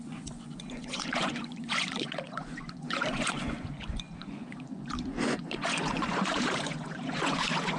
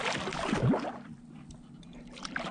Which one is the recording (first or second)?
second